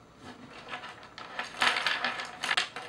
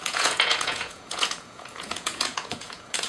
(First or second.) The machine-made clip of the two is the second